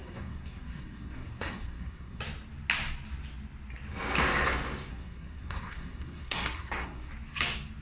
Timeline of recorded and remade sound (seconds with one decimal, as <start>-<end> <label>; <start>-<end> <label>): 0.0-2.2 remade; 2.2-4.9 recorded; 4.9-7.1 remade; 7.1-7.8 recorded

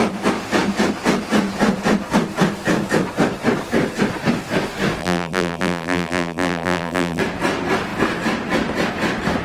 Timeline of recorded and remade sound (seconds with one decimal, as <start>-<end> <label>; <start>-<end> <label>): 0.0-5.0 recorded; 5.0-7.2 remade; 7.2-9.4 recorded

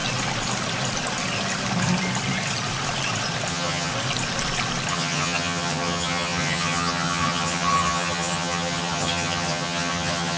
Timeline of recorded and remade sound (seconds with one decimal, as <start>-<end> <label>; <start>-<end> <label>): 0.0-3.5 recorded; 3.5-3.9 remade; 3.9-4.9 recorded; 4.9-10.4 remade

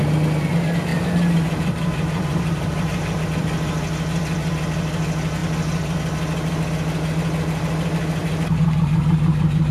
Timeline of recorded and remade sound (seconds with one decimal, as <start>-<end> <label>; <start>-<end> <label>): 0.0-0.9 recorded; 0.9-3.2 remade; 3.2-8.2 recorded; 8.2-9.0 remade; 9.0-9.7 recorded

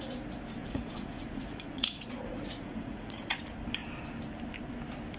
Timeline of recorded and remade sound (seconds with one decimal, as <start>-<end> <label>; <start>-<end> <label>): 0.0-0.6 recorded; 0.6-3.4 remade; 3.4-5.2 recorded